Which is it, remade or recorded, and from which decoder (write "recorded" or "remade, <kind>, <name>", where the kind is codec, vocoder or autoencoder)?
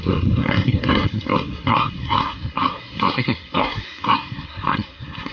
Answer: remade, codec, SNAC